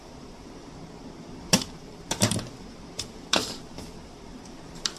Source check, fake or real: fake